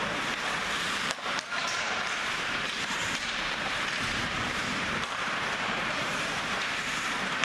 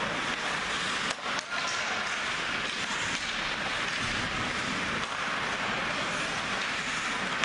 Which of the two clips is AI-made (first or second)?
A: first